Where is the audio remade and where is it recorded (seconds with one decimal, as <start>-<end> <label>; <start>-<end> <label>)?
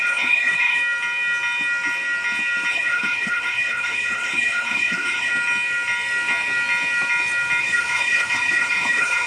0.0-0.8 remade; 0.8-2.7 recorded; 2.7-5.3 remade; 5.3-7.6 recorded; 7.6-9.3 remade